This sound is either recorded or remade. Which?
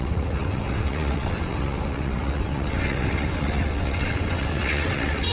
remade